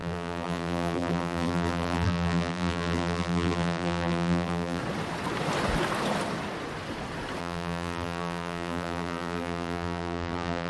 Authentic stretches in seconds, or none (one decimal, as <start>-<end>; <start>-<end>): 4.8-7.4